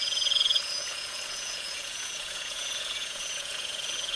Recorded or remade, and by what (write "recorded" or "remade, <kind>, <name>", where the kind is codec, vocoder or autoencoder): remade, vocoder, Vocos